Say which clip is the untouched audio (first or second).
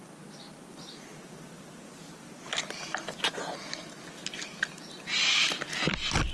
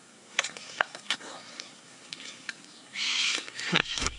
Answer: first